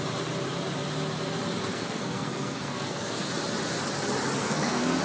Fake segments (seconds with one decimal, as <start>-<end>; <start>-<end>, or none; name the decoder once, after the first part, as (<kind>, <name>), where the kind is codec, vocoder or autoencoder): 1.7-3.3 (codec, SNAC); 4.4-5.0